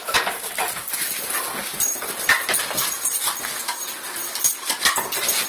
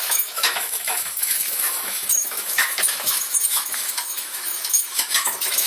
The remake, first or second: second